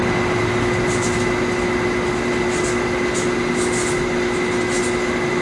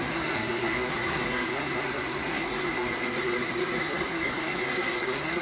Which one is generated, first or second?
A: second